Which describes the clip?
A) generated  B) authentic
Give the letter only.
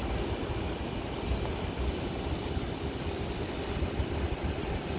B